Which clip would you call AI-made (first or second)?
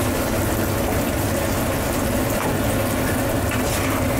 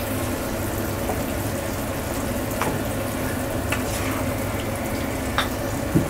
first